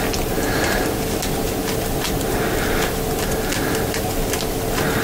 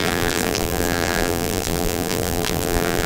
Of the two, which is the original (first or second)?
first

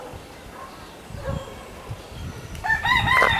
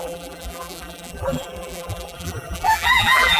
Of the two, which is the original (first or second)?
first